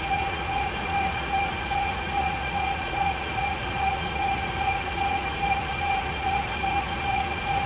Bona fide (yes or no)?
no